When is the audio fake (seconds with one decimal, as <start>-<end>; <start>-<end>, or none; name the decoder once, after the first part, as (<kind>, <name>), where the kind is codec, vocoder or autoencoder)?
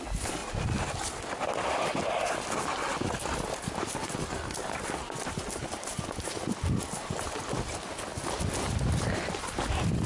none